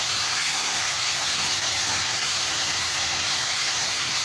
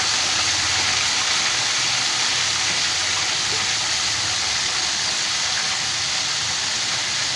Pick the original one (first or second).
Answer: second